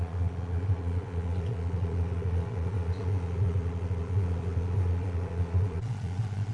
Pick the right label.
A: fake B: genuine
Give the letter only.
A